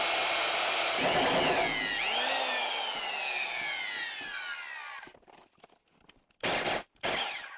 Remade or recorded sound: recorded